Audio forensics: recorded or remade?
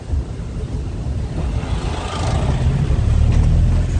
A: recorded